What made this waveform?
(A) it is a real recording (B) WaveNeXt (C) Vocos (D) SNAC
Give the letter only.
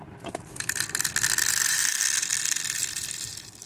A